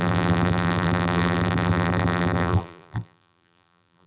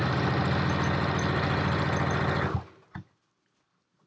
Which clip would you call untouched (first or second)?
second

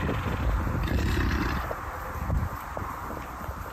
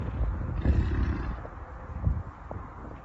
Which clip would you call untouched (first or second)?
second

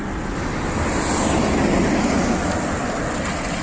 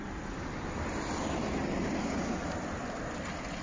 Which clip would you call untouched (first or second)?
first